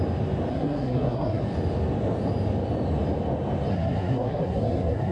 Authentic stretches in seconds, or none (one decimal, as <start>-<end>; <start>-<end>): 0.0-0.5; 1.4-3.7